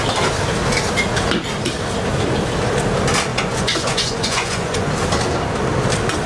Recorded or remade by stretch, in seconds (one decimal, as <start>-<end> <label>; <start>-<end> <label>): 0.0-3.3 recorded; 3.3-4.9 remade; 4.9-6.3 recorded